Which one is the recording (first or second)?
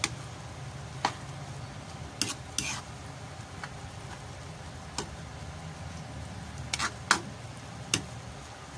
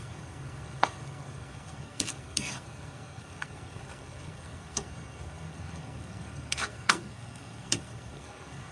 first